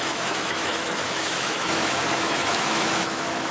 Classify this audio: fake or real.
fake